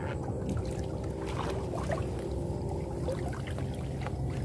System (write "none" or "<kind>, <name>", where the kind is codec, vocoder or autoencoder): none